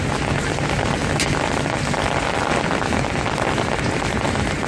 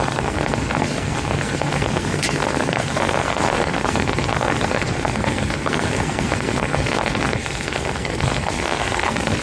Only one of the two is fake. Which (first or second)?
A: second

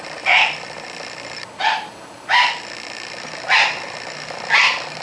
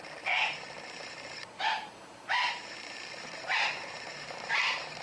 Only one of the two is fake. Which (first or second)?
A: second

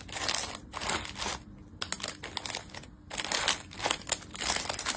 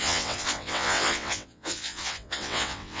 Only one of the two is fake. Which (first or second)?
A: second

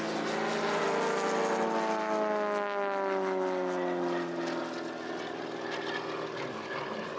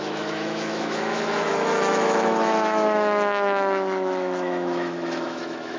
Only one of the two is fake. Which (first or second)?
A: second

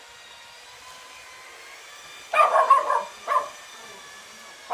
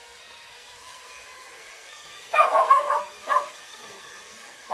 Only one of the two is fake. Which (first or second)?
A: second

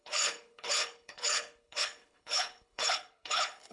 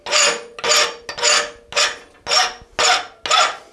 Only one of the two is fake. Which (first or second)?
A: first